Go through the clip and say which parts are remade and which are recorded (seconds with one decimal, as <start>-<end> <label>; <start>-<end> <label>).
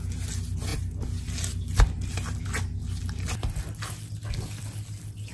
0.0-5.3 recorded